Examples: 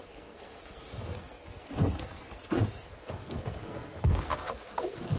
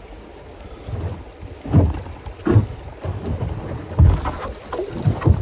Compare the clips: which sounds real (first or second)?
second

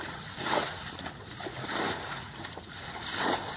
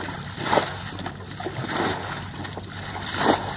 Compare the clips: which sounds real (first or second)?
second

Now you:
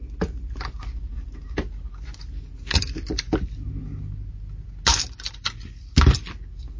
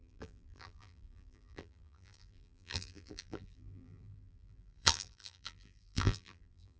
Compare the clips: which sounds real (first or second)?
first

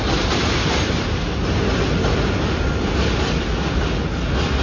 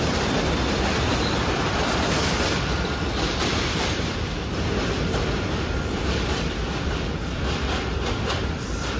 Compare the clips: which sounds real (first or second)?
first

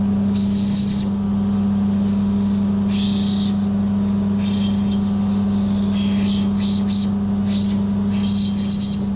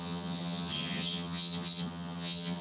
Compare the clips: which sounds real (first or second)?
first